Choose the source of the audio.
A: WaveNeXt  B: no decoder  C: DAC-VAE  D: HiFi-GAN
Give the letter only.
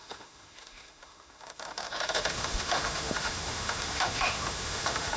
C